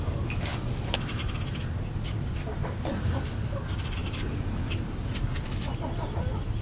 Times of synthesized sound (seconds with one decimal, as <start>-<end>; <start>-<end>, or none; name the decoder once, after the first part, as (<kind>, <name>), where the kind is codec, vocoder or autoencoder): none